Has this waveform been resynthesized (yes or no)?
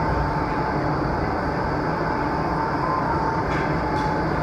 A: no